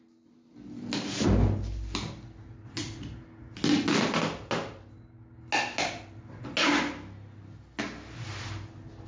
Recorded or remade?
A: recorded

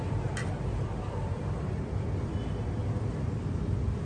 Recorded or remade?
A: recorded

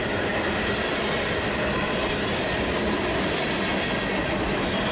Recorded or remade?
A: recorded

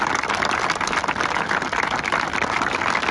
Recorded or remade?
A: recorded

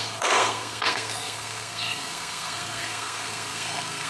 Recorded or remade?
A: remade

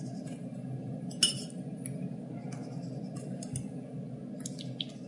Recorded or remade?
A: recorded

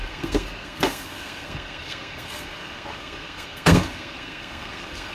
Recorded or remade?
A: remade